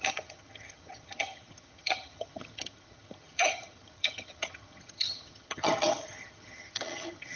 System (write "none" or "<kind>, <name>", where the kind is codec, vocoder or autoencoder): vocoder, HiFi-GAN